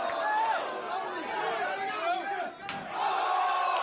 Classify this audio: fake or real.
real